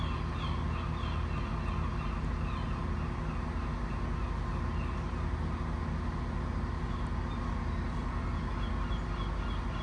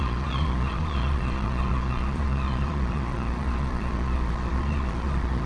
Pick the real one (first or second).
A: first